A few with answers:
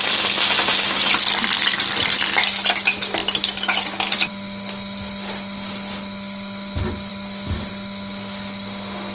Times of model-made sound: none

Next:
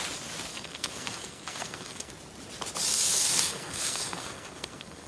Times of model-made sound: 0.5-2.1; 2.9-5.1

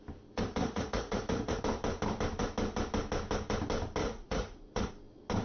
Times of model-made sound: 0.6-1.6; 4.0-4.9

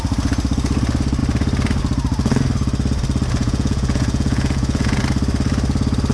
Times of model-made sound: 3.4-5.0

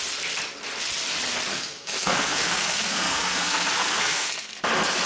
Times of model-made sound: 1.5-4.6

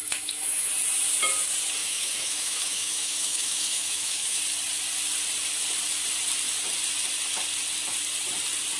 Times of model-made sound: 0.0-0.7; 1.8-4.4